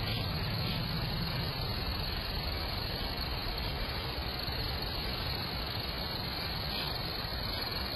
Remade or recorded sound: recorded